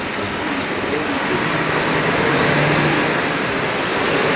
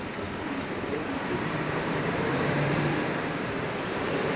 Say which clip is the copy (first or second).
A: second